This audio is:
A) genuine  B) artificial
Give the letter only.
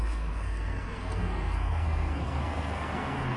B